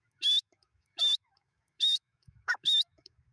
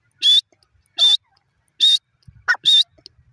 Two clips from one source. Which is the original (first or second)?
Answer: second